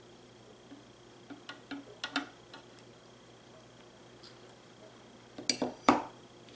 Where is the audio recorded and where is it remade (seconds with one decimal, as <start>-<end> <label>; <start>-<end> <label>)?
0.0-6.6 recorded